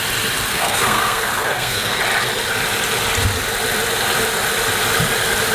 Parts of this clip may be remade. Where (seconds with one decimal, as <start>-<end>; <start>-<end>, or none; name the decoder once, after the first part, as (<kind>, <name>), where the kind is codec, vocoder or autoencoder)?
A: 0.5-2.0 (codec, SNAC)